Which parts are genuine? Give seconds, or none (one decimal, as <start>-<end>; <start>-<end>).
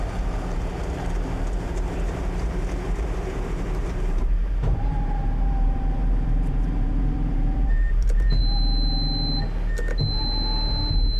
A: 8.4-11.2